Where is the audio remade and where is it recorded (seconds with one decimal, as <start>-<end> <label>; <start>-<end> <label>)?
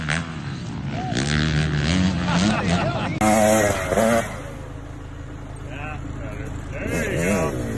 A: 0.0-7.8 recorded